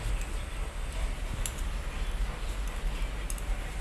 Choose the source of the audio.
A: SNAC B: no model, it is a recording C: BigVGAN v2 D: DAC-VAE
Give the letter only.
B